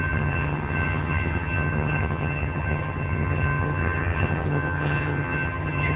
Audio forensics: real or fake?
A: fake